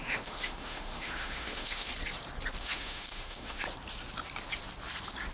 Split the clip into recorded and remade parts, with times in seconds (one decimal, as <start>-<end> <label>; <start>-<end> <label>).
0.0-1.9 remade; 1.9-2.6 recorded; 2.6-3.6 remade; 3.6-5.3 recorded